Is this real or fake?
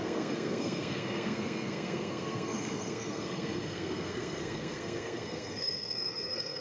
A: fake